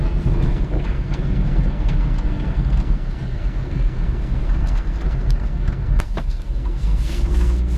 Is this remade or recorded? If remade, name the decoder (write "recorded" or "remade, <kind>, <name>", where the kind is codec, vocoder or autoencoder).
remade, codec, SNAC